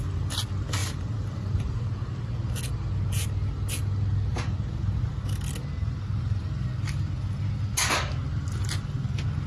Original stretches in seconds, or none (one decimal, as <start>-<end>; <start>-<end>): 0.0-0.8; 1.8-4.3; 5.4-9.5